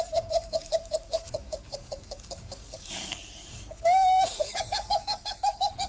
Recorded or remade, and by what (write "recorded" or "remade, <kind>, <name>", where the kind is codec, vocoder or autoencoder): remade, codec, DAC